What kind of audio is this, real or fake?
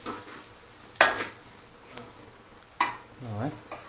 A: real